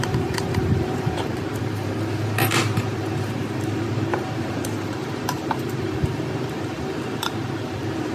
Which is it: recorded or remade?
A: remade